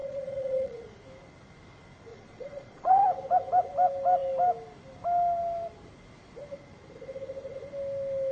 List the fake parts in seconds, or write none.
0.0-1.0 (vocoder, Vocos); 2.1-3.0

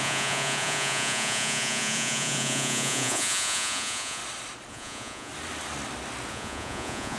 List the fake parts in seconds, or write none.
0.0-4.2 (vocoder, Vocos); 4.7-5.3; 6.3-7.2

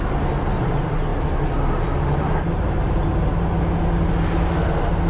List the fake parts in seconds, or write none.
none

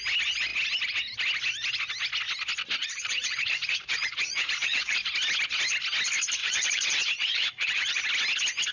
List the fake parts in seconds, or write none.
2.8-5.1 (vocoder, Vocos); 6.4-8.0

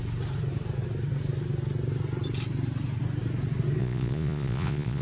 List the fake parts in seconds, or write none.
3.8-5.0 (vocoder, Vocos)